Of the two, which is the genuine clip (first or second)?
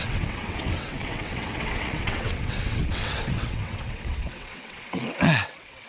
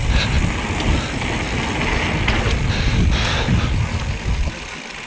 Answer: second